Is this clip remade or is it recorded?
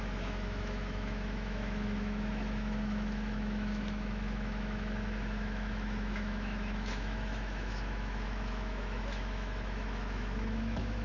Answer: remade